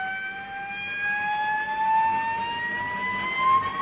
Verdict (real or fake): real